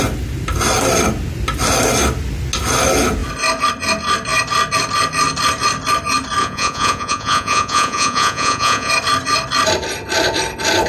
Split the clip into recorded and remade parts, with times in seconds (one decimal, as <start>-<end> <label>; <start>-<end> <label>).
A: 0.0-6.4 recorded; 6.4-8.9 remade; 8.9-10.9 recorded